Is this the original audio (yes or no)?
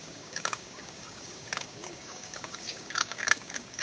no